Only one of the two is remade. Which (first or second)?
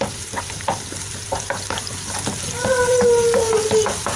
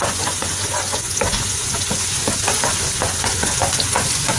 second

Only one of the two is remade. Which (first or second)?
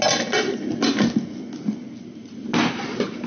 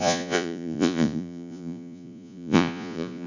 second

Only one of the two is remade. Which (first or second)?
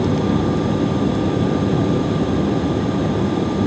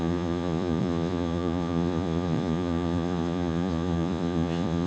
second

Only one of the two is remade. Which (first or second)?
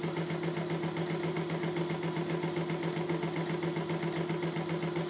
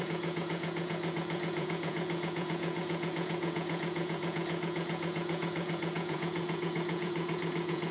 second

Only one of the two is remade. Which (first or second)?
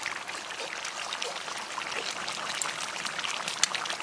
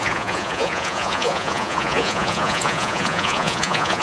second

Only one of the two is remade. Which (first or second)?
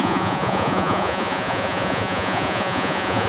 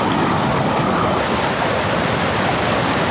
first